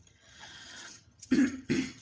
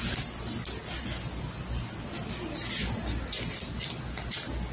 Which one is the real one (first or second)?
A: second